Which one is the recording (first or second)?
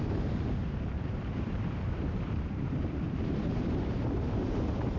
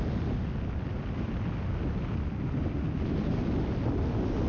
second